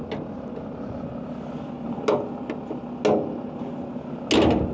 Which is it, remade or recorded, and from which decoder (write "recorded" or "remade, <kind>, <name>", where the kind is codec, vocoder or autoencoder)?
recorded